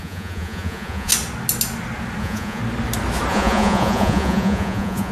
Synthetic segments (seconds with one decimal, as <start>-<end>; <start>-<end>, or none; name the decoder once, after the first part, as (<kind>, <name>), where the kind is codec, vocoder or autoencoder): 0.0-1.1 (vocoder, Vocos); 2.2-2.6; 3.3-5.1